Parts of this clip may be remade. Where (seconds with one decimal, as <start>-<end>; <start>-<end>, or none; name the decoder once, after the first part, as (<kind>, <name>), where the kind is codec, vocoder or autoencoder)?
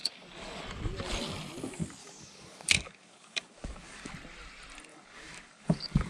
0.0-0.6 (codec, DAC); 2.0-4.1; 4.9-6.1